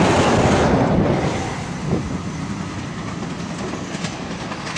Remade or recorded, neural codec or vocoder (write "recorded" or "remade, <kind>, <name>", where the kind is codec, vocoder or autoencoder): recorded